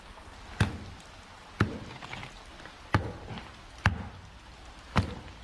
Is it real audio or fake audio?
real